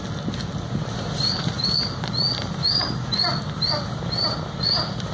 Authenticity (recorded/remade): recorded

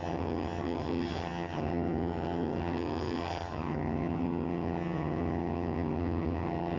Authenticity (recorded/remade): remade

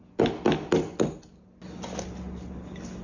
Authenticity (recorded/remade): recorded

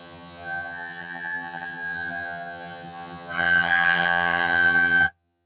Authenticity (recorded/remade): remade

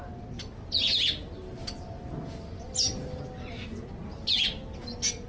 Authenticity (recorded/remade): recorded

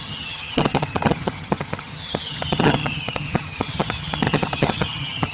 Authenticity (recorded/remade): remade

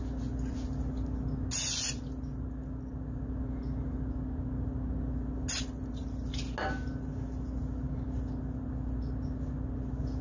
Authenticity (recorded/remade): recorded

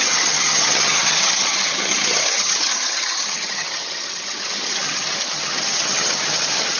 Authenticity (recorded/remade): remade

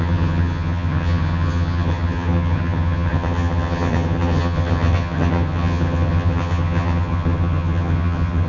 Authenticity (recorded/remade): remade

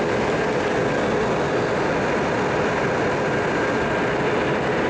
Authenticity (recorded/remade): recorded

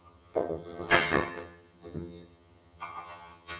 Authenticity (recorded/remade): remade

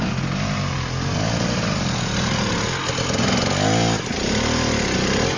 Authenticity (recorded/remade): recorded